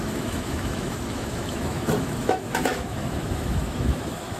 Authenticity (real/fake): fake